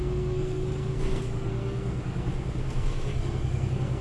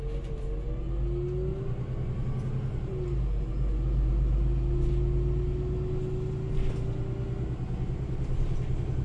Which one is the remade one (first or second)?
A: first